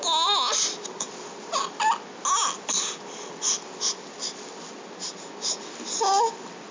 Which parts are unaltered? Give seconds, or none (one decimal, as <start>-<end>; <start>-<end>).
0.0-6.7